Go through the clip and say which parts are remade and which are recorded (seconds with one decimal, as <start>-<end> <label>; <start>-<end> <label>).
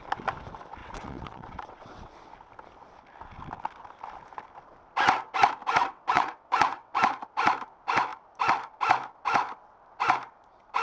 0.0-0.8 recorded; 0.8-2.3 remade; 2.3-5.8 recorded; 5.8-7.0 remade; 7.0-10.8 recorded